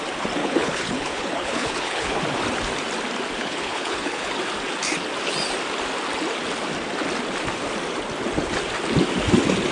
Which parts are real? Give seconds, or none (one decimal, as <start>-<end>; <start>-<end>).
0.0-0.4; 2.2-3.4; 4.3-9.7